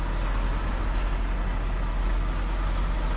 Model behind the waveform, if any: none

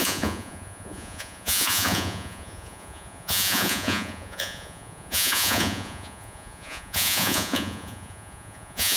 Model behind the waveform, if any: vocoder, Vocos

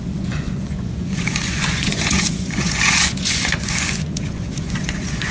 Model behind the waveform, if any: vocoder, Vocos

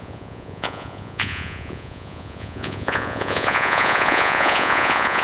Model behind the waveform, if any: vocoder, Vocos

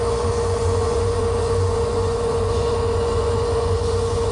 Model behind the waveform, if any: vocoder, Vocos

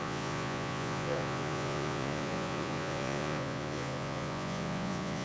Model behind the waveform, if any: vocoder, Vocos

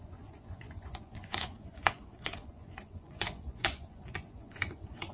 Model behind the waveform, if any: vocoder, Vocos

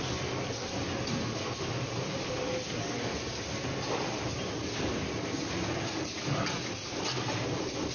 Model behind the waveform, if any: none